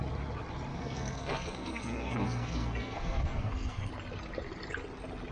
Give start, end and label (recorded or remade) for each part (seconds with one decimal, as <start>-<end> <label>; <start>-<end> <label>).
0.0-0.7 recorded; 0.7-3.9 remade; 3.9-5.3 recorded